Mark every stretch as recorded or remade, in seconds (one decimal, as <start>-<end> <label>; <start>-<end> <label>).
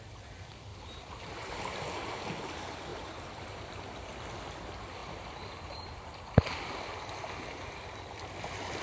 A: 0.0-0.7 recorded; 0.7-1.6 remade; 1.6-2.9 recorded; 2.9-3.8 remade; 3.8-5.0 recorded; 5.0-6.0 remade; 6.0-8.8 recorded